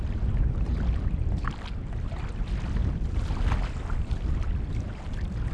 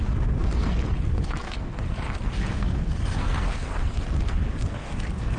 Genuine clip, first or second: first